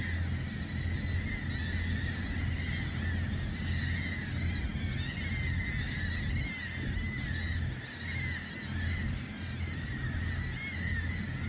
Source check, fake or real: real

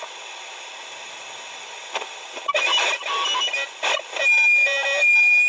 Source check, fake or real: real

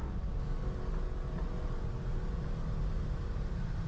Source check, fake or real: real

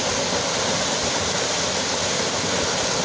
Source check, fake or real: real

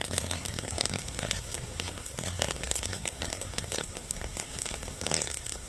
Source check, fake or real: fake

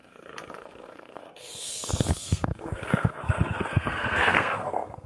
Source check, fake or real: fake